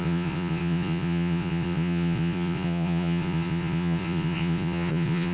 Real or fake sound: fake